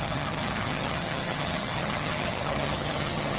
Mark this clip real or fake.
fake